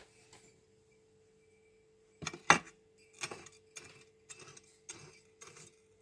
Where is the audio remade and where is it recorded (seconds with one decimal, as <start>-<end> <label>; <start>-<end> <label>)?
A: 0.0-6.0 recorded